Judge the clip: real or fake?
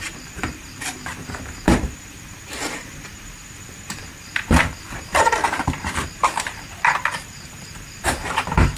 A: fake